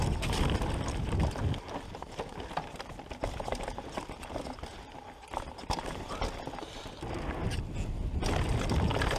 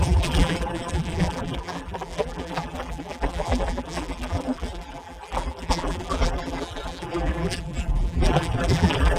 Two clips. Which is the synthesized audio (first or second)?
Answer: second